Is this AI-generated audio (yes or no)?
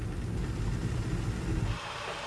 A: no